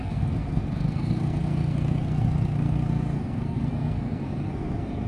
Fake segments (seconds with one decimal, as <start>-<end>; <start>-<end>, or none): 0.0-5.1